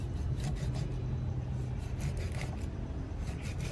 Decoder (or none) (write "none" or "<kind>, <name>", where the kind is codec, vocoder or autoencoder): none